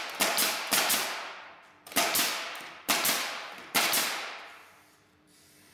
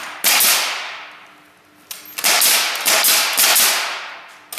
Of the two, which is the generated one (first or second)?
first